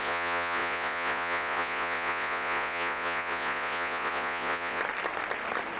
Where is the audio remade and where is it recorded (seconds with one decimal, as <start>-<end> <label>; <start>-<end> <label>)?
0.0-4.8 remade; 4.8-5.8 recorded